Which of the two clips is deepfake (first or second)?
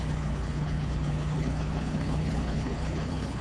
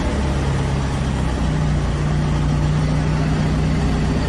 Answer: first